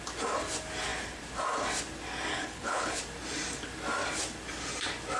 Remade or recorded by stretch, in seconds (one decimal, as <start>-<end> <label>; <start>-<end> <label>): 0.0-2.3 recorded; 2.3-3.0 remade; 3.0-5.2 recorded